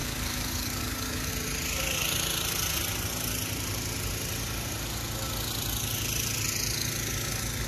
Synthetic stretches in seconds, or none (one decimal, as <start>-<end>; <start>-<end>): 0.0-1.3